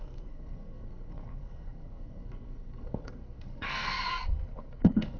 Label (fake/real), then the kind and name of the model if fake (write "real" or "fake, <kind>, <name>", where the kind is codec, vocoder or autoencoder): fake, codec, SNAC